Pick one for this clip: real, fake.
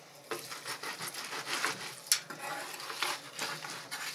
real